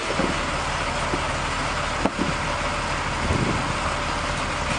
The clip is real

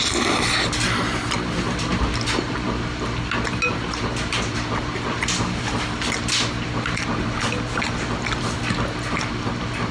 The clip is real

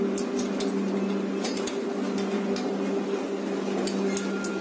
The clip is real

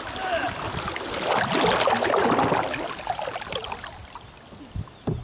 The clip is real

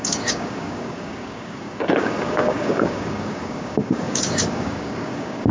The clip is fake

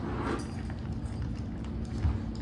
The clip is real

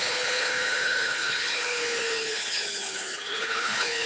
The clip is fake